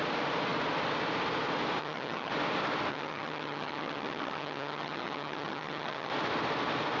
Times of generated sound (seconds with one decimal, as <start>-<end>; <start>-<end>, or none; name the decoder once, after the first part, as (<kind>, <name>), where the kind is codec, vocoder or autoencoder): 1.8-2.3 (vocoder, HiFi-GAN); 2.9-6.1